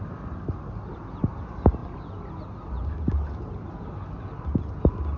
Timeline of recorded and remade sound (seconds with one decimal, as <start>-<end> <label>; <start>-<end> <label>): 0.0-5.2 recorded